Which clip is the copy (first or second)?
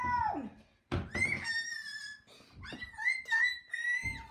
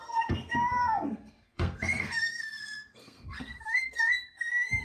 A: second